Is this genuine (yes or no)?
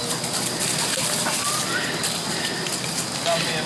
yes